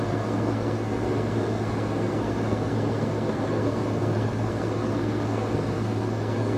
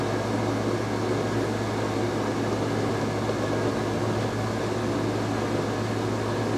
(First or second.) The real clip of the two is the second